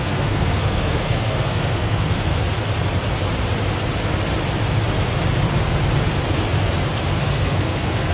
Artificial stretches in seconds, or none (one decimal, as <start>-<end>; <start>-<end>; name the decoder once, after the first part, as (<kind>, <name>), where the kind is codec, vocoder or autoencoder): 0.0-2.3 (codec, SNAC); 7.2-8.1